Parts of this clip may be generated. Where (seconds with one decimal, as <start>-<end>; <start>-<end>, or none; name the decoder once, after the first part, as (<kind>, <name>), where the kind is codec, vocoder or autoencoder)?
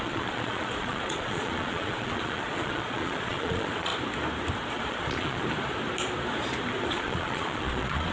0.0-3.9 (vocoder, Vocos); 4.7-5.4; 6.9-8.1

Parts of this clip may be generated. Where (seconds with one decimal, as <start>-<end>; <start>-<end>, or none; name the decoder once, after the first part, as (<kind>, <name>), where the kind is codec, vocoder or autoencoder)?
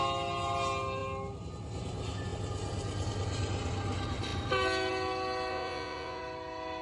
5.5-6.2 (vocoder, Vocos)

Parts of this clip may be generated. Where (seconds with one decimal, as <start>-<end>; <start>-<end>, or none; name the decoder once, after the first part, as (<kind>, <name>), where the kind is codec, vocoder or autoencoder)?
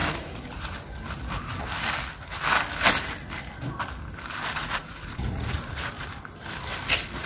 4.6-5.9 (vocoder, Vocos)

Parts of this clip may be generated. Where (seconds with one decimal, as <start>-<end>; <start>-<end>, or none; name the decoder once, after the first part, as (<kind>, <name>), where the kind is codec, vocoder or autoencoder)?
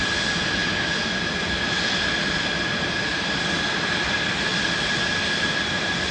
none